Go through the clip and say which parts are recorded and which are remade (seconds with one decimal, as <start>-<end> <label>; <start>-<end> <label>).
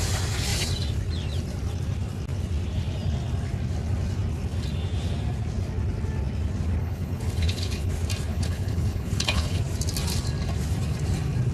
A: 0.0-6.8 recorded; 6.8-7.9 remade; 7.9-8.3 recorded; 8.3-9.6 remade; 9.6-11.5 recorded